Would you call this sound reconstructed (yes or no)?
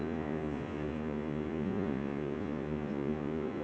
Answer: yes